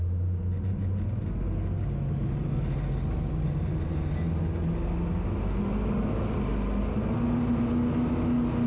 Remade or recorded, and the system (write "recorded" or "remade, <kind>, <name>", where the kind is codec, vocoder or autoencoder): recorded